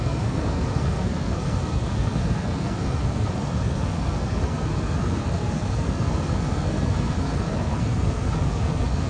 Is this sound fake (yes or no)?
yes